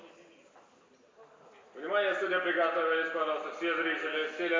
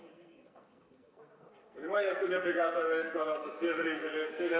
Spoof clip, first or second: second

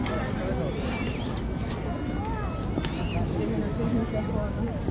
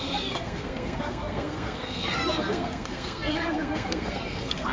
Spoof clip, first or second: second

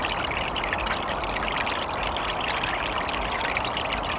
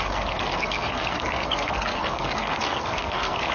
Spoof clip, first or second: second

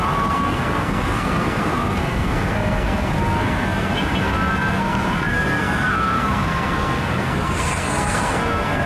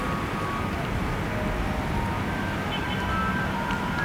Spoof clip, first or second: first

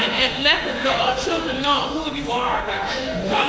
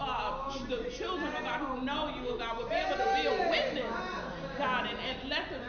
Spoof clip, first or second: first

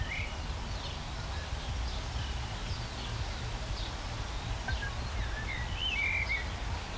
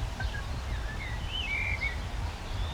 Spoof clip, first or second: second